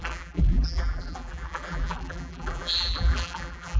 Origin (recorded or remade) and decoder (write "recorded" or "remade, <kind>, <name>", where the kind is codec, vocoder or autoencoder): remade, vocoder, BigVGAN v2